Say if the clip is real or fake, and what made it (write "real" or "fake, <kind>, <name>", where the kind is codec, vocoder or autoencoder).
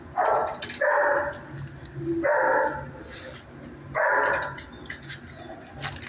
real